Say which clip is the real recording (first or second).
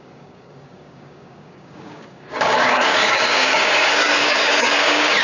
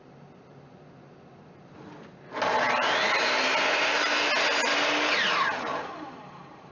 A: second